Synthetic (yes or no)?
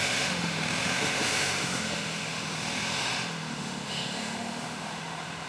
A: yes